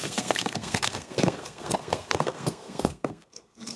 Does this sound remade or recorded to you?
remade